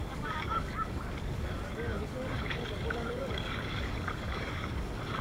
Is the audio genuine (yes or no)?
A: no